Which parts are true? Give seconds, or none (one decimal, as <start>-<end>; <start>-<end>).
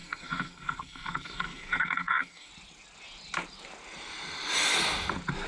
2.5-5.5